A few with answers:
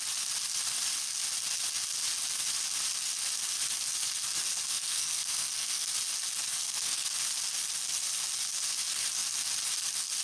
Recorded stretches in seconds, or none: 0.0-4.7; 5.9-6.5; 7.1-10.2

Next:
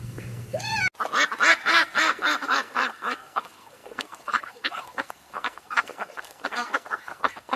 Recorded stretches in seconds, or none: 0.7-1.5

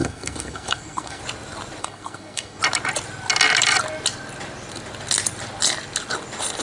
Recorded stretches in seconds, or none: 1.2-1.8; 2.6-6.6

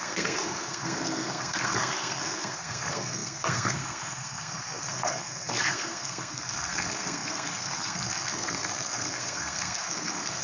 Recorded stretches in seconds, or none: none

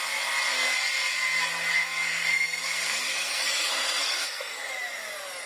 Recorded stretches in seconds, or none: 0.0-1.7; 4.7-5.5

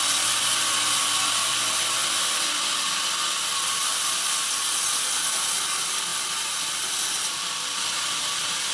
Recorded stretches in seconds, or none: 0.0-8.7

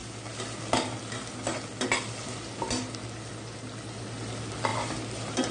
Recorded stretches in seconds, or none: 0.0-5.5

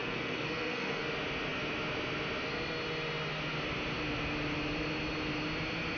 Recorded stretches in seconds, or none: 1.1-6.0